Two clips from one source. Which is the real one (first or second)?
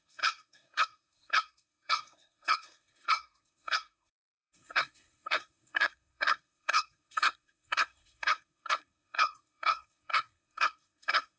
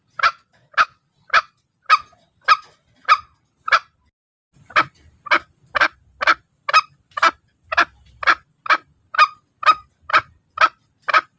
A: second